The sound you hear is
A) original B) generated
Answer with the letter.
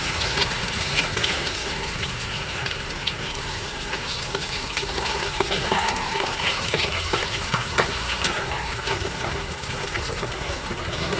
B